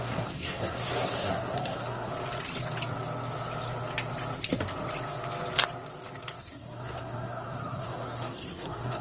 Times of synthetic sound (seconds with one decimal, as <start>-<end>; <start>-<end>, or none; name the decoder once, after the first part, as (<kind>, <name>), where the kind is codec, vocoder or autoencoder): 0.0-2.1 (codec, SNAC); 6.4-9.0